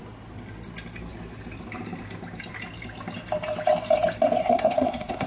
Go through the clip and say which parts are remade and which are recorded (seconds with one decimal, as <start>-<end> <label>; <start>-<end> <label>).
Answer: 0.0-4.4 recorded; 4.4-5.3 remade